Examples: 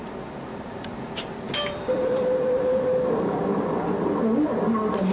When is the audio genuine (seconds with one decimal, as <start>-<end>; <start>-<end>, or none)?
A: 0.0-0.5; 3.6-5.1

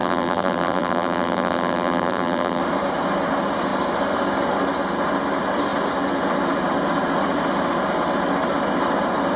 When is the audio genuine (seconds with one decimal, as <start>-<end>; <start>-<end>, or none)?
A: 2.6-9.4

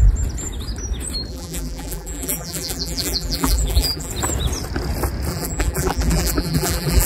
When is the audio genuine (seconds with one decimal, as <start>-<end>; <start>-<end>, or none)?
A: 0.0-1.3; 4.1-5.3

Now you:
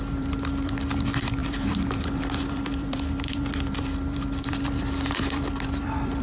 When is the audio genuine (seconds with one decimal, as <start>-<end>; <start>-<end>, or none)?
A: none

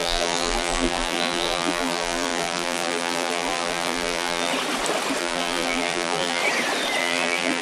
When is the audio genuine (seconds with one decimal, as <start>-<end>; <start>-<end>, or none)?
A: 4.5-5.2; 6.4-7.0